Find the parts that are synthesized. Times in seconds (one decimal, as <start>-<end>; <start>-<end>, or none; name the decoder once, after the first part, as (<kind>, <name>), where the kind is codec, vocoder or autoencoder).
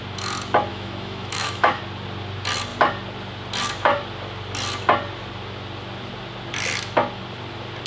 0.7-1.8 (autoencoder, DAC-VAE)